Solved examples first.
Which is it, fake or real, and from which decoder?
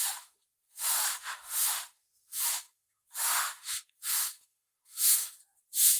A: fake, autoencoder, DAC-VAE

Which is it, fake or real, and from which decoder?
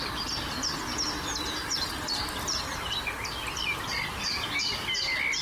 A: real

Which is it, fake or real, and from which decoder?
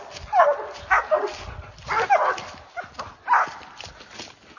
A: real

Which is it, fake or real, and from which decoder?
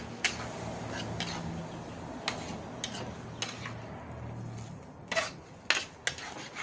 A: real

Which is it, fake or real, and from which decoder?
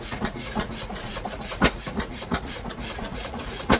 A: fake, vocoder, Vocos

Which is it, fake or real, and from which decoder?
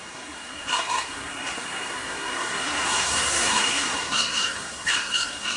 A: fake, codec, SNAC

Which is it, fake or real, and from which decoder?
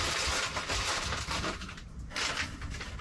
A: real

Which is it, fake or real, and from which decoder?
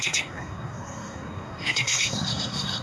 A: fake, codec, SNAC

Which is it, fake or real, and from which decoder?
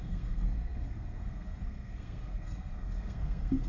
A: fake, codec, SNAC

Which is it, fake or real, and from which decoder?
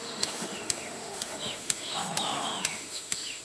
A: fake, autoencoder, DAC-VAE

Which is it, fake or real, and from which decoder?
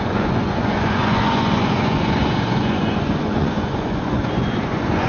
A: fake, vocoder, Vocos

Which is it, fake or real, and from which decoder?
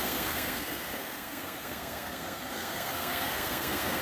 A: fake, codec, SNAC